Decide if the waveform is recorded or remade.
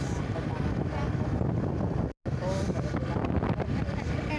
recorded